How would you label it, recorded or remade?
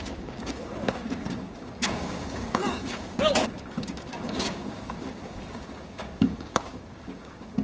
remade